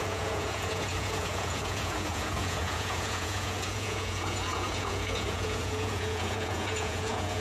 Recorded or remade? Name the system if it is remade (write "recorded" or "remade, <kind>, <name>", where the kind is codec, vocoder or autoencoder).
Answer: remade, vocoder, Vocos